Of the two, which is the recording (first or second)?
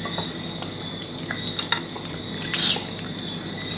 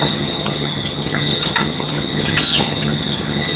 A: first